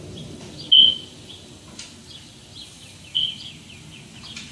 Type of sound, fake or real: real